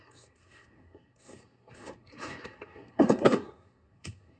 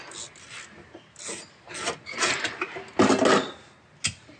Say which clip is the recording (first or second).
second